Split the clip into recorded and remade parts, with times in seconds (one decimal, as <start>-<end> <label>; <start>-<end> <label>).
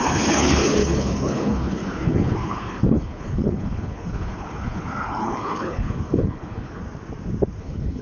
0.0-6.8 remade; 6.8-7.6 recorded; 7.6-8.0 remade